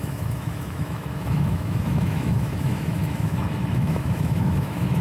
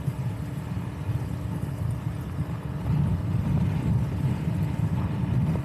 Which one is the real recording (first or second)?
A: second